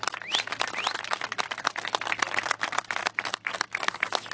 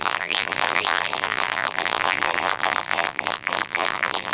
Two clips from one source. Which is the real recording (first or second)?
first